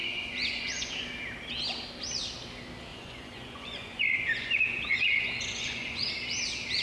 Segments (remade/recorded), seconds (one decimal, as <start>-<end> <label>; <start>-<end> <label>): 0.0-0.9 remade; 0.9-2.9 recorded; 2.9-6.1 remade; 6.1-6.8 recorded